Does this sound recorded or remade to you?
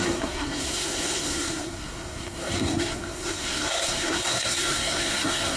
remade